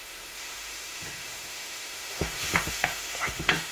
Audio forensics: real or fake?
fake